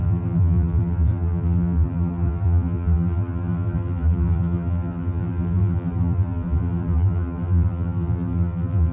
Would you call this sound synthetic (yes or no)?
yes